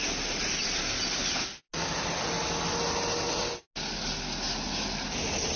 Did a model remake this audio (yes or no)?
no